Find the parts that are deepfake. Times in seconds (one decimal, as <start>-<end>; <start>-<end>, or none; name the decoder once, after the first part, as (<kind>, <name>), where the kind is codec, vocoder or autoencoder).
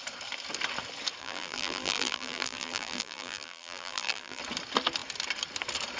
1.2-4.4 (vocoder, BigVGAN v2)